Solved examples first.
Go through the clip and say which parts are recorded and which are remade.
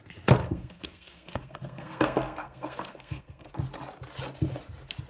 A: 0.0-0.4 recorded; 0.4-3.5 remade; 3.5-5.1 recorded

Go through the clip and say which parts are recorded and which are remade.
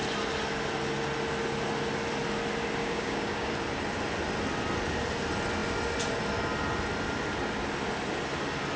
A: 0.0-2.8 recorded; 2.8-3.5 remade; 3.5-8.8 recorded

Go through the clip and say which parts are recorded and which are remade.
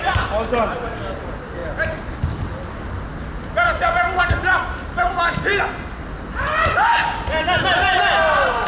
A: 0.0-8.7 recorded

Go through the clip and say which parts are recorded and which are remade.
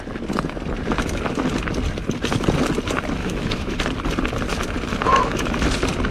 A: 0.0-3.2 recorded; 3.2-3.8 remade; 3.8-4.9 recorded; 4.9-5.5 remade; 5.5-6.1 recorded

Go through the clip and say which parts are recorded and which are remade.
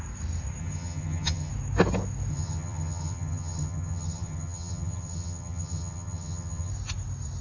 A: 0.0-0.6 recorded; 0.6-1.5 remade; 1.5-2.3 recorded; 2.3-6.7 remade; 6.7-7.4 recorded